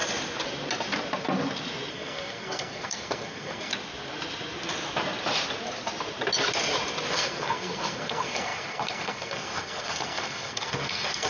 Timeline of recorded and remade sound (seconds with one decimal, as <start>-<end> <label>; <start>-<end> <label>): 0.0-1.9 recorded; 1.9-3.7 remade; 3.7-7.1 recorded; 7.1-11.3 remade